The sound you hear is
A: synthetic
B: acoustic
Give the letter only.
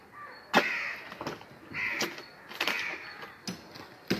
B